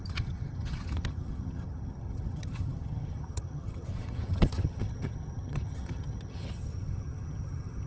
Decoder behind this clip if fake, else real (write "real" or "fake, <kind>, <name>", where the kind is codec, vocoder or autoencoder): fake, vocoder, HiFi-GAN